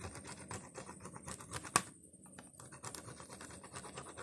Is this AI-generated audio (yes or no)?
no